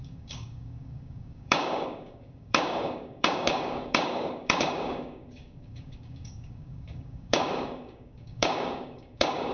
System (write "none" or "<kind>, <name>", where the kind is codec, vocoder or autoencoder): codec, DAC